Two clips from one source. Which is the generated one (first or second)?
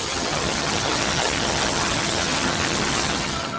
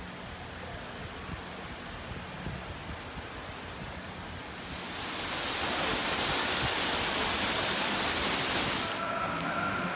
first